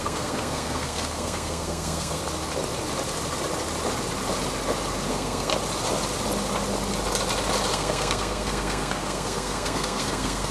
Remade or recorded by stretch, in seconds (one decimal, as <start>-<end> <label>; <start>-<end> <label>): 0.0-2.2 remade; 2.2-5.1 recorded; 5.1-5.5 remade; 5.5-7.7 recorded; 7.7-10.5 remade